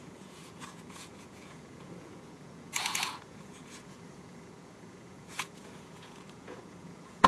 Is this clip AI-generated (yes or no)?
yes